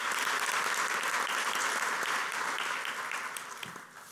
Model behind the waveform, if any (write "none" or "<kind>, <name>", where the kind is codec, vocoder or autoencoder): none